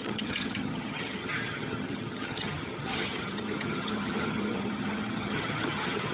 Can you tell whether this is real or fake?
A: fake